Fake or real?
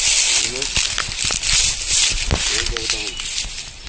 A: real